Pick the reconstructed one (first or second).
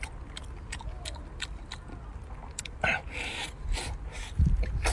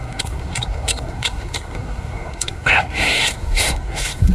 second